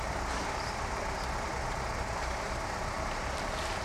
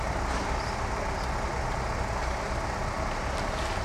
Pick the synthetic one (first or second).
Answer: first